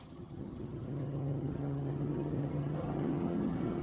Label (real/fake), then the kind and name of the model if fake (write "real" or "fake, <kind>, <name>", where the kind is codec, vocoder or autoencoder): fake, vocoder, HiFi-GAN